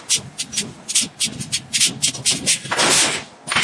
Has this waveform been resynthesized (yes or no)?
no